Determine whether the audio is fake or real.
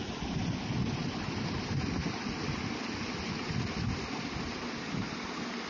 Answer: real